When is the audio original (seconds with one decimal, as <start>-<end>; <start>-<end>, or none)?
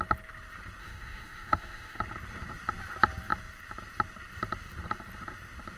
0.0-0.8; 2.0-5.8